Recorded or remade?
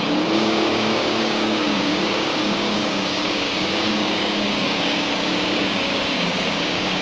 remade